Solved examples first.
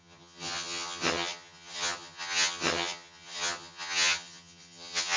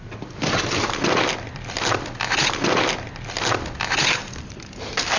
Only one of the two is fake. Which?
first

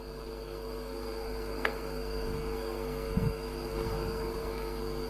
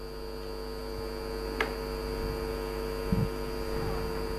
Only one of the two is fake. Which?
first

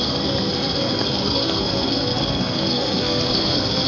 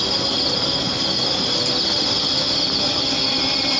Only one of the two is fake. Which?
first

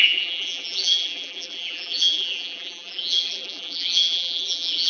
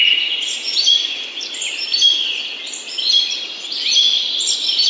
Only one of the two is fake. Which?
first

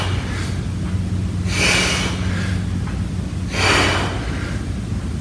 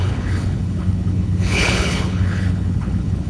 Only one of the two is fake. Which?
second